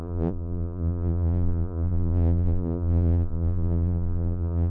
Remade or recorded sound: remade